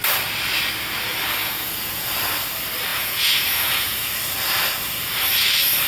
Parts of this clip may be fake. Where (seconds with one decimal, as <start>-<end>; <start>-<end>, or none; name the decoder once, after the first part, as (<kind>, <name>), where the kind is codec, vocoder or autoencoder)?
1.4-2.1 (vocoder, Vocos); 2.9-4.1